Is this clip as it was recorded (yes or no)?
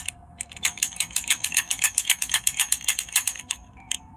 no